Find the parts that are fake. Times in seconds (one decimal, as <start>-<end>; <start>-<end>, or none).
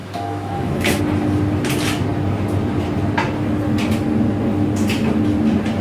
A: 0.0-1.0